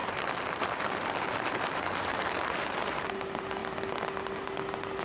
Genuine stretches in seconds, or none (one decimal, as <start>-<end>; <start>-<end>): 3.0-5.0